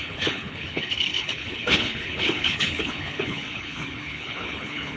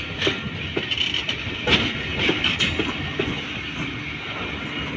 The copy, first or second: first